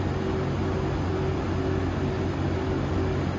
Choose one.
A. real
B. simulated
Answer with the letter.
A